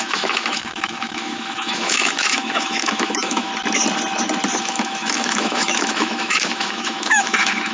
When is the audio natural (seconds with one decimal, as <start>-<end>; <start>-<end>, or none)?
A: 3.5-4.6